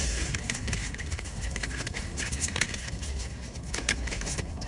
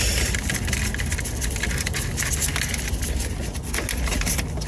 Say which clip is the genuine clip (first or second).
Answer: second